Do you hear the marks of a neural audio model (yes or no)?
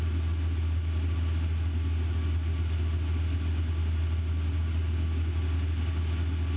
no